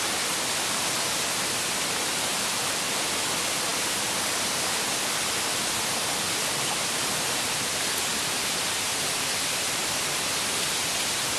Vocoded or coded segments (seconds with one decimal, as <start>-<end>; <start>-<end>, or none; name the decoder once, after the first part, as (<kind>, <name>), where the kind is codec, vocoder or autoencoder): none